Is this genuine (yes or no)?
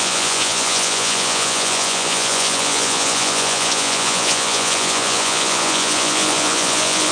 no